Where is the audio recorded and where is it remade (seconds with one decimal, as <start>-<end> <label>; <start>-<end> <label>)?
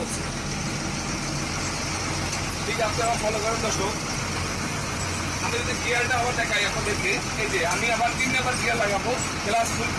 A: 0.0-4.8 recorded; 4.8-5.5 remade; 5.5-10.0 recorded